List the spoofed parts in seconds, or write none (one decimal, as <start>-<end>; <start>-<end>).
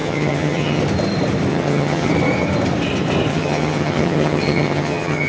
0.0-0.8; 1.5-2.1; 3.3-5.3